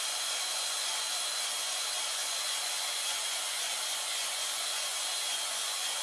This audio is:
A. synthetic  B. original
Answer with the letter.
A